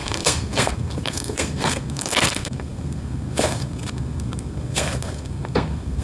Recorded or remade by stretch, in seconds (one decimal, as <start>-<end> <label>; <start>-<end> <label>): 0.0-6.0 remade